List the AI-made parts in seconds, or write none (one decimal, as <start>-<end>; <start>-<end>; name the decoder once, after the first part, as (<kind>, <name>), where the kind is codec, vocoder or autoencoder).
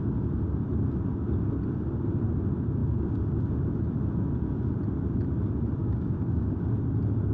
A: 5.8-6.6 (codec, DAC)